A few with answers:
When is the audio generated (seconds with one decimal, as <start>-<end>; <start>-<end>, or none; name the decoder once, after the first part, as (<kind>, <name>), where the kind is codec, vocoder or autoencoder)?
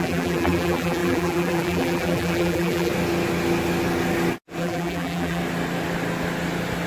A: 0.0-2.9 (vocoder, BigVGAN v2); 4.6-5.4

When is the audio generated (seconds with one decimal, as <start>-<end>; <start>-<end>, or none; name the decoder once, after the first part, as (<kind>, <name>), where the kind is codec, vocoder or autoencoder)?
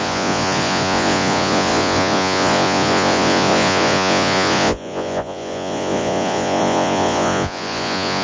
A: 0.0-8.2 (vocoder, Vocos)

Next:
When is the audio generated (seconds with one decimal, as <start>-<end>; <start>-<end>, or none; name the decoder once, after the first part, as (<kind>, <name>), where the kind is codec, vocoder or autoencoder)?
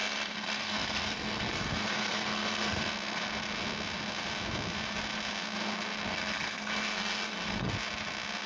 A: 0.0-2.9 (codec, SNAC); 6.1-7.7